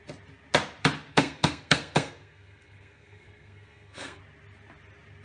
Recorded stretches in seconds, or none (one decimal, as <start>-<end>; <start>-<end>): 0.0-1.1; 4.2-5.2